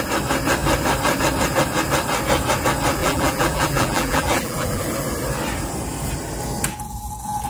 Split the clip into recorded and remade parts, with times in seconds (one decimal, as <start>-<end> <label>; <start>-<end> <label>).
0.0-3.0 recorded; 3.0-4.8 remade; 4.8-7.5 recorded